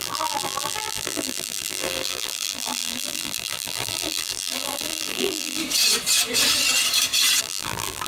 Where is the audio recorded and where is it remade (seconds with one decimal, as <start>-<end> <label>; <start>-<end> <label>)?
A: 0.0-5.6 remade; 5.6-7.4 recorded; 7.4-8.1 remade

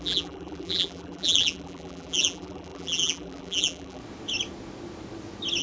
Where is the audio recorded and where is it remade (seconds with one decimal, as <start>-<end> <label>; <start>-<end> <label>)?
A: 0.0-4.0 remade; 4.0-5.6 recorded

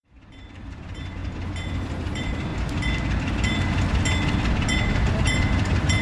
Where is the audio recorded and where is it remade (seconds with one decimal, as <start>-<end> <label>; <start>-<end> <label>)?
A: 0.0-1.2 remade; 1.2-1.9 recorded; 1.9-2.5 remade; 2.5-5.1 recorded; 5.1-6.0 remade

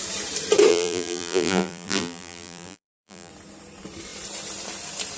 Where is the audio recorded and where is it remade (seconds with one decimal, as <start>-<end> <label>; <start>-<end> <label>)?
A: 0.0-0.7 recorded; 0.7-3.3 remade; 3.3-5.2 recorded

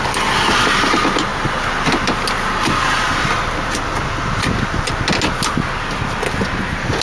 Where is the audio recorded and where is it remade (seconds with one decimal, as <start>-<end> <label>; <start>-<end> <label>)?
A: 0.0-7.0 recorded

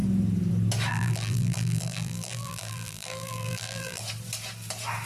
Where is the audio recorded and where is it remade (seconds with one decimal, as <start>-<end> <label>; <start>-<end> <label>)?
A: 0.0-0.9 recorded; 0.9-4.0 remade; 4.0-5.1 recorded

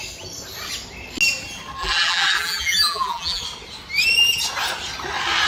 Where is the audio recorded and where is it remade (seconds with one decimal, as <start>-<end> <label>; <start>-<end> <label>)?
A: 0.0-1.8 recorded; 1.8-3.4 remade; 3.4-5.5 recorded